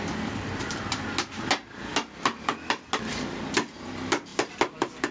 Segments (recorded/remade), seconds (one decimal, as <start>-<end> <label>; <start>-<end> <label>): 0.0-5.1 recorded